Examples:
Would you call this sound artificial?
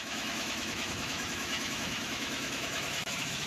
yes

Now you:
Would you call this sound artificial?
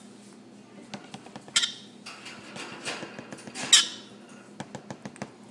no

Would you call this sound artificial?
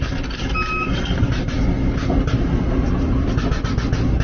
no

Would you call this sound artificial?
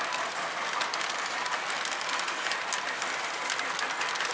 no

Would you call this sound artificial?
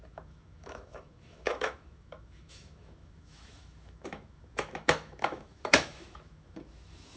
yes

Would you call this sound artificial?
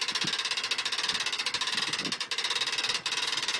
no